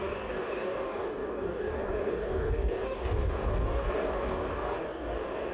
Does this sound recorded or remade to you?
remade